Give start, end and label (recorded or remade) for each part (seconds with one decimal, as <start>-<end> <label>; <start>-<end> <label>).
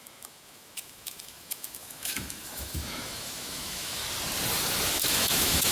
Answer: 0.0-4.0 remade; 4.0-4.9 recorded; 4.9-5.7 remade